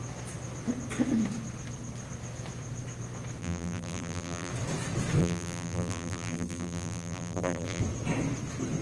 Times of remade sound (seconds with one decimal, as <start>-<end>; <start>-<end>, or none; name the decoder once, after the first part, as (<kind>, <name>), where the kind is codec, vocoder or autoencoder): 3.4-4.5 (vocoder, BigVGAN v2); 5.2-7.8